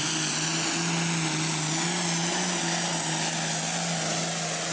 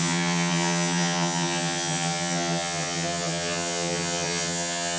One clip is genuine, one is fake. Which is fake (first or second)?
second